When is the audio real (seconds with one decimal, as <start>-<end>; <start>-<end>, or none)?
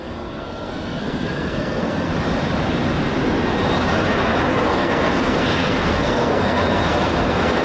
2.1-4.5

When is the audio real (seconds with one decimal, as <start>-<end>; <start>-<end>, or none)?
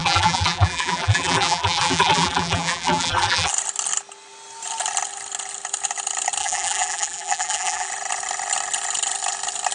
3.5-6.4; 7.9-9.7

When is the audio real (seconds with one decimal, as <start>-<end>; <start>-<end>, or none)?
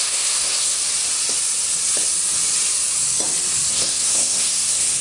0.8-3.7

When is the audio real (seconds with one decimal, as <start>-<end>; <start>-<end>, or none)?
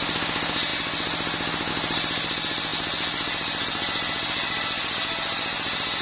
0.0-6.0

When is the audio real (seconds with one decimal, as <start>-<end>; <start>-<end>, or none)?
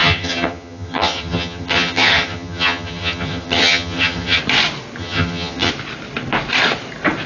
4.4-5.0; 5.7-7.3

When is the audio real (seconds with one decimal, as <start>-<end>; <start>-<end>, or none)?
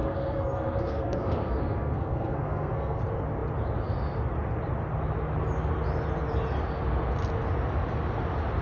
3.0-8.6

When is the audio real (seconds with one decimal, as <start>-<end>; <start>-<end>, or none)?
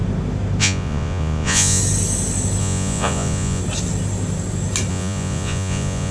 0.0-0.6; 1.8-2.6; 3.6-4.9